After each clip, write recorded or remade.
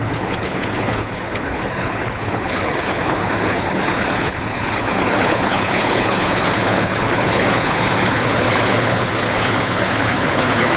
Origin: remade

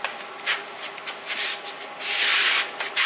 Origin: recorded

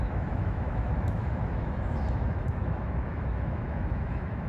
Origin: remade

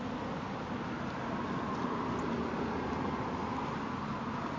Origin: recorded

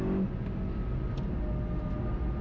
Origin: recorded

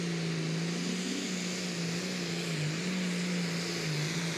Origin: recorded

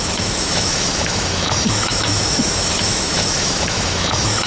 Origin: remade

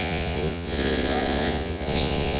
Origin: remade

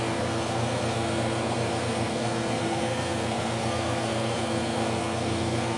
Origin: remade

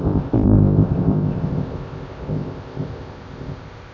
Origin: remade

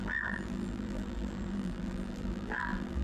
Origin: remade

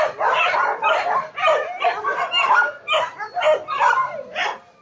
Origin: recorded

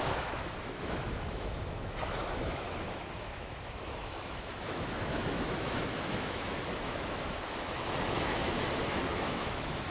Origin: remade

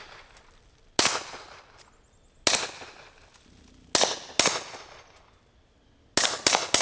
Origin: recorded